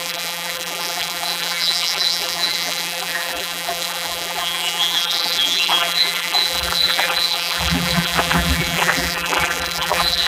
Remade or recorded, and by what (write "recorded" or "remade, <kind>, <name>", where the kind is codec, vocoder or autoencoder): remade, vocoder, BigVGAN v2